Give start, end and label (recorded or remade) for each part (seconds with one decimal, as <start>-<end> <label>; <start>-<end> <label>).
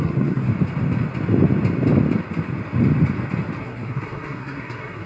0.0-0.5 remade; 0.5-3.6 recorded; 3.6-5.1 remade